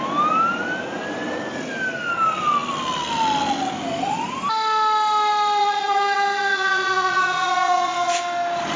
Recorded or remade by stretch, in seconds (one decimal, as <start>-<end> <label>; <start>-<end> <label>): 0.0-5.6 recorded; 5.6-8.2 remade; 8.2-8.8 recorded